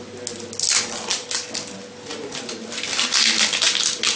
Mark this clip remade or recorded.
recorded